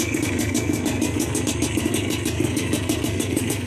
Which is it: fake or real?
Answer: fake